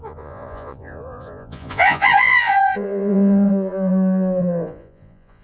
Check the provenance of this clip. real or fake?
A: fake